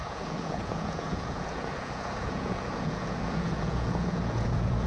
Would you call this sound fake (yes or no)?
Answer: yes